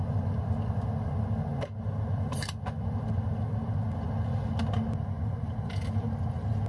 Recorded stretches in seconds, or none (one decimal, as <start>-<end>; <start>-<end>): 0.0-6.7